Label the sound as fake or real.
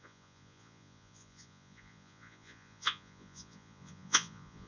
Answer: fake